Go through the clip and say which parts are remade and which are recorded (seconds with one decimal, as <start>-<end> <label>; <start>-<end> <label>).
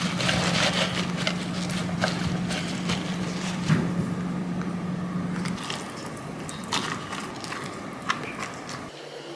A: 0.0-1.8 recorded; 1.8-4.0 remade; 4.0-9.4 recorded